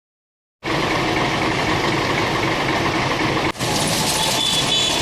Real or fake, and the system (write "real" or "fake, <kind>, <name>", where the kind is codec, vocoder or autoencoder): real